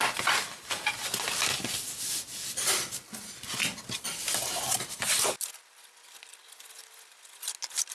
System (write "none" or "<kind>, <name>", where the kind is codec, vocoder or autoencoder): none